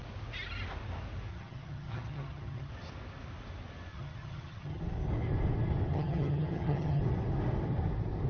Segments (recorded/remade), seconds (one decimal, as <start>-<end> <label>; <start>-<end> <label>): 0.0-1.3 recorded; 1.3-2.7 remade; 2.7-3.9 recorded; 3.9-4.8 remade; 4.8-5.9 recorded; 5.9-7.0 remade; 7.0-8.3 recorded